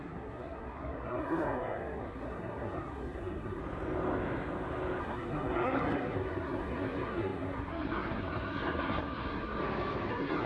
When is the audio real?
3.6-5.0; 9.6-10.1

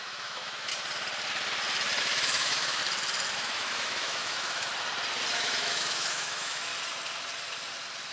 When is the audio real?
0.7-2.0; 2.8-3.3; 4.7-5.3; 6.7-8.1

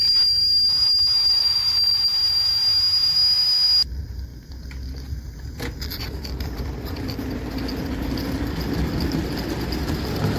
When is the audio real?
0.0-1.4; 1.9-10.4

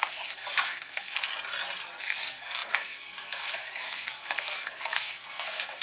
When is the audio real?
1.3-2.0

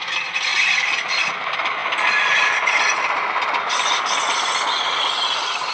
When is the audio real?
0.0-5.7

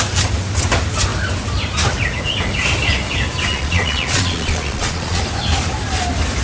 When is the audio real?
0.0-3.5; 5.2-6.4